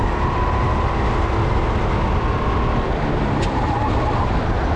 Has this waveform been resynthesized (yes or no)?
no